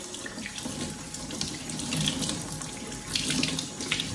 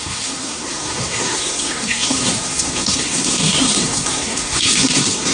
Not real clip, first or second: second